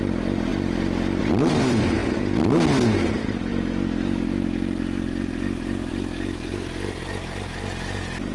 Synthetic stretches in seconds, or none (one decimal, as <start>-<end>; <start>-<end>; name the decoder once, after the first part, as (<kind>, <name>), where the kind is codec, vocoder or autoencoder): 0.0-0.5 (vocoder, BigVGAN v2); 1.2-2.0; 3.1-3.5; 5.9-6.5